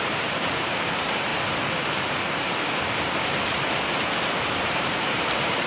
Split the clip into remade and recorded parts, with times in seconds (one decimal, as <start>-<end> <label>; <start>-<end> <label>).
0.0-1.3 remade; 1.3-4.4 recorded; 4.4-5.7 remade